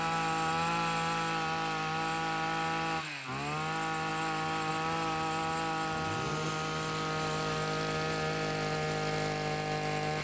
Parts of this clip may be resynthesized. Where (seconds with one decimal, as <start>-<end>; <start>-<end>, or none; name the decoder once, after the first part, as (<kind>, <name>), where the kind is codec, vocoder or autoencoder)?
none